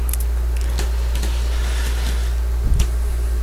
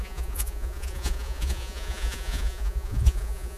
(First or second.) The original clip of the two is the first